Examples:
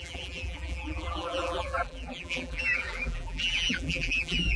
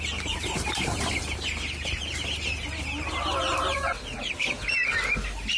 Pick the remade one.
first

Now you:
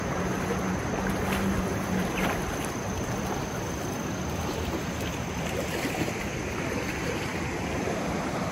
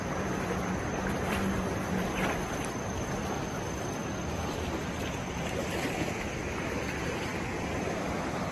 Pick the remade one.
second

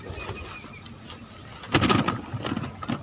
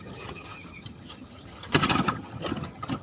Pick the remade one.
second